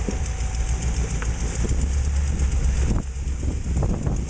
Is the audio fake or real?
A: real